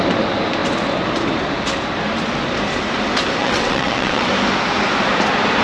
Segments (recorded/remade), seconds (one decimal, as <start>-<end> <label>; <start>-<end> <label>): 0.0-3.4 recorded; 3.4-4.3 remade; 4.3-5.6 recorded